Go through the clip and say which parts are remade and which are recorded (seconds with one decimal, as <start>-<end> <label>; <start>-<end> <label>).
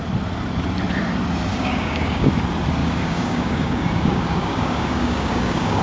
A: 0.0-1.5 recorded; 1.5-2.4 remade; 2.4-2.8 recorded; 2.8-5.8 remade